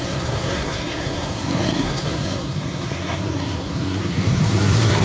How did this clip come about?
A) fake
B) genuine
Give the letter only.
A